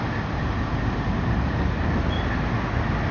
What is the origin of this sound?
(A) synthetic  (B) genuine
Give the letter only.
B